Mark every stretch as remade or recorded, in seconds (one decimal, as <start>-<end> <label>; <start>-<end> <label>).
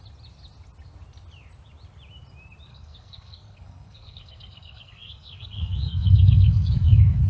0.0-2.7 recorded; 2.7-7.3 remade